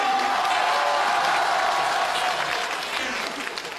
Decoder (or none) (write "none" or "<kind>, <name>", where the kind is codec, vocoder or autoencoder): none